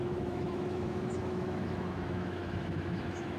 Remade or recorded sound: remade